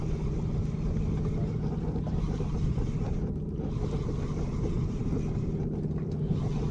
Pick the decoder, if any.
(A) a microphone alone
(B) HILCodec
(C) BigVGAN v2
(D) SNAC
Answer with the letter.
A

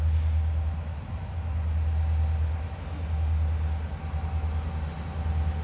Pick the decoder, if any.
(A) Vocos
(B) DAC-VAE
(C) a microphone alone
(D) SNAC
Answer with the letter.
C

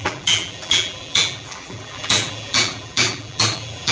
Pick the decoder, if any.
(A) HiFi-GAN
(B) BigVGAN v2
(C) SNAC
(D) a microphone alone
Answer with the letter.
B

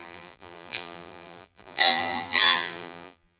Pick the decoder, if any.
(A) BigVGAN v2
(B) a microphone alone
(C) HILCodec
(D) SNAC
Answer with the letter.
A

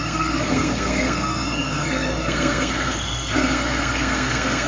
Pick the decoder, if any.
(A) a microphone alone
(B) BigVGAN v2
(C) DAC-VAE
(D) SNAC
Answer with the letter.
D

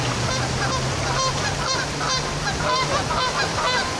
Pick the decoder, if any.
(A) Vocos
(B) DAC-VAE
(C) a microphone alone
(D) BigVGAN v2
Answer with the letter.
C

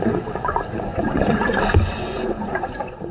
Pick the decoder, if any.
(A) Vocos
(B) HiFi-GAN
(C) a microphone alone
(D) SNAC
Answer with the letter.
A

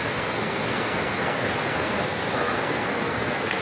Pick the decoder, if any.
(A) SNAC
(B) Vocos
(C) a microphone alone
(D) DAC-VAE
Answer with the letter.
A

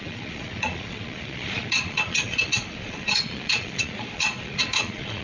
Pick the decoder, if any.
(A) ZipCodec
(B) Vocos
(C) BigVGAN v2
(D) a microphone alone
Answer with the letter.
B